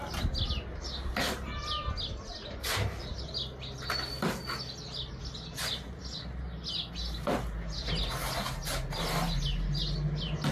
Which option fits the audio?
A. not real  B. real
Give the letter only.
B